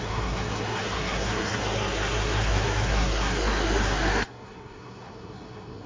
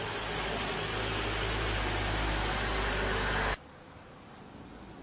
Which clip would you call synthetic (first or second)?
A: first